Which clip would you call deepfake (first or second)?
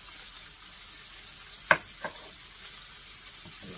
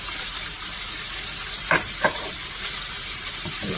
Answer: second